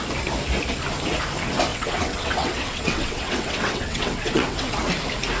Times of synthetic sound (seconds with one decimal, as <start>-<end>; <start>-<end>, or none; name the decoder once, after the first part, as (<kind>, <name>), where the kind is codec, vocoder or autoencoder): 1.7-4.9 (vocoder, WaveNeXt)